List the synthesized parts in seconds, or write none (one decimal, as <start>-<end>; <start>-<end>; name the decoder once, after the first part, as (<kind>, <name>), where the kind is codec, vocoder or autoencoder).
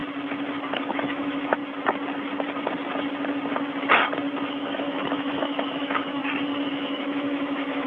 0.8-1.6 (autoencoder, DAC-VAE); 4.5-6.2; 6.7-7.9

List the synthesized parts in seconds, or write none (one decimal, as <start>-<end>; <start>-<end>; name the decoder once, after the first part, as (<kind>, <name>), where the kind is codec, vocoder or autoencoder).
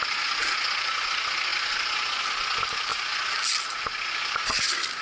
none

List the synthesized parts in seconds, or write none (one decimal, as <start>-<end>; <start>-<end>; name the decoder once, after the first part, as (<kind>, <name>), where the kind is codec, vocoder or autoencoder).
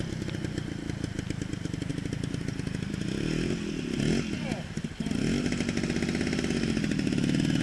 none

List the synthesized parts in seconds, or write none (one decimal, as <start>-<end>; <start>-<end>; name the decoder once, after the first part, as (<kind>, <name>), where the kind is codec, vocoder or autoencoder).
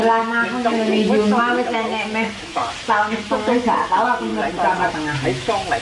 0.0-2.6 (autoencoder, DAC-VAE); 3.2-4.3; 4.9-5.8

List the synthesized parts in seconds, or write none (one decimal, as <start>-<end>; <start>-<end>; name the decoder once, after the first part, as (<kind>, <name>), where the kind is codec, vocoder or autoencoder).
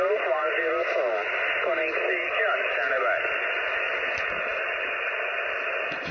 none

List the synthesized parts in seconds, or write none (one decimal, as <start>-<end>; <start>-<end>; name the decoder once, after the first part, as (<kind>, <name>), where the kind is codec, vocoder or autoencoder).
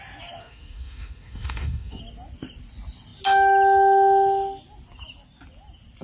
0.4-2.0 (autoencoder, DAC-VAE)